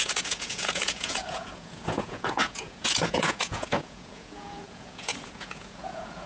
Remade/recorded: remade